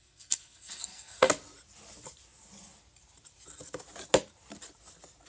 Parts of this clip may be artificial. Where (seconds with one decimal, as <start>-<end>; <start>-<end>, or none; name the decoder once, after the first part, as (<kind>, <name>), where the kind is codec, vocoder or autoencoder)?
0.0-1.3 (codec, SNAC)

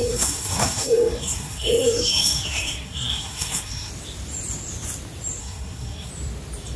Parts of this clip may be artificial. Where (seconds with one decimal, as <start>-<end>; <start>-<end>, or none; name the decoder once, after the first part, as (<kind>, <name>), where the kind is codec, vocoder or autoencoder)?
0.0-3.9 (codec, SNAC); 5.4-6.1

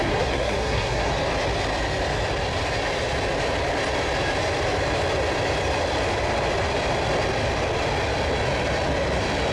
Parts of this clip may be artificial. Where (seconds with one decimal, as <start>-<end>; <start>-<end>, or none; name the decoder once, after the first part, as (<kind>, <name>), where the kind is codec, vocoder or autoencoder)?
0.0-1.1 (codec, SNAC)

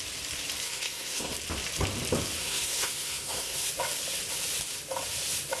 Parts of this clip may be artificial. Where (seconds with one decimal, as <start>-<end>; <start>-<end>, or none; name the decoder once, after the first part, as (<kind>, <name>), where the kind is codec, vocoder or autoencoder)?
0.6-1.3 (codec, SNAC); 2.4-3.7

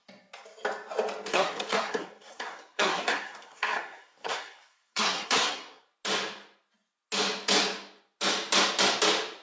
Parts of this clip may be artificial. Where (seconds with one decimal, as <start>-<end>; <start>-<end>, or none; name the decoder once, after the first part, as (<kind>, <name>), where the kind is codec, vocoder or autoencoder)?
1.3-5.9 (codec, SNAC)

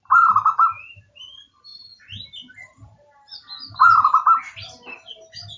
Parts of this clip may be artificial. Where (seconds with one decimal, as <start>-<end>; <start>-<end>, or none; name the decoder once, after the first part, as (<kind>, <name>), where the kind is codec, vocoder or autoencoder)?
none